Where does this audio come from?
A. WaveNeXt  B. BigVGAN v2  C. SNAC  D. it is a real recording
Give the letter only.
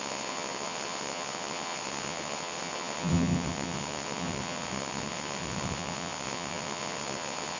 A